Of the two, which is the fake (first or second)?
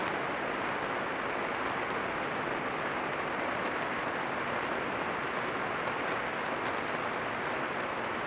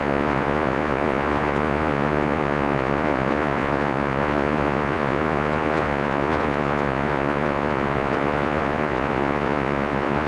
second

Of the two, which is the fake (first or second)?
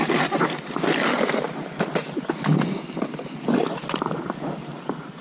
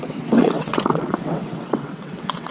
second